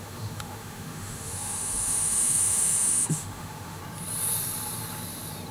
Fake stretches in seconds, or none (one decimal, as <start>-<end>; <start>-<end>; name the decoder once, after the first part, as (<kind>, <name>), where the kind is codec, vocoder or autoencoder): 0.0-3.8 (autoencoder, DAC-VAE)